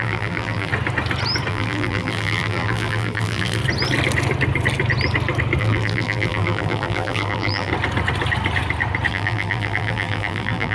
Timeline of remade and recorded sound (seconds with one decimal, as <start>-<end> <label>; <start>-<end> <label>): 0.0-0.7 remade; 0.7-1.5 recorded; 1.5-3.6 remade; 3.6-5.6 recorded; 5.6-7.7 remade; 7.7-9.1 recorded; 9.1-10.7 remade